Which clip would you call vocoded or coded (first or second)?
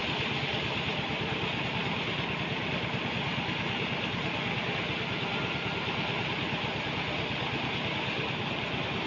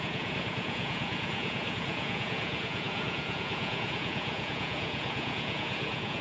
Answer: second